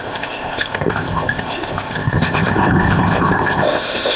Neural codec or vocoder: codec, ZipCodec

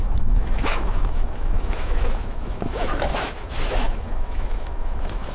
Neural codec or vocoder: autoencoder, DAC-VAE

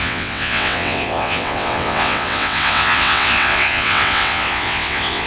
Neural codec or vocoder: vocoder, WaveNeXt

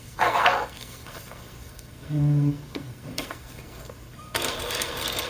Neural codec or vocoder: codec, SNAC